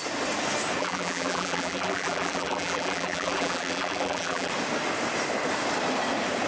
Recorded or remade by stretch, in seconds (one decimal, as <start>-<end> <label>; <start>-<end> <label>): 0.0-0.8 recorded; 0.8-4.5 remade; 4.5-6.5 recorded